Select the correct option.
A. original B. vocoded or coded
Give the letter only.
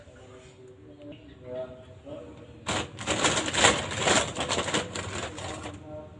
A